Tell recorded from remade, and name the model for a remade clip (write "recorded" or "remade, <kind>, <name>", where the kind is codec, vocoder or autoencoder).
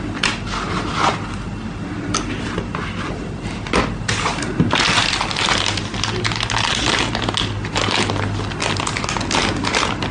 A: recorded